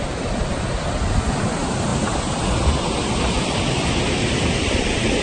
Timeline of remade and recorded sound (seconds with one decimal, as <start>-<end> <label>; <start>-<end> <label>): 0.0-5.2 recorded